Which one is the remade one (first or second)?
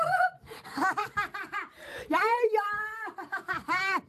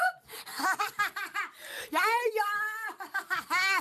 first